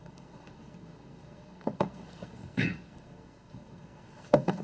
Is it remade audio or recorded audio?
remade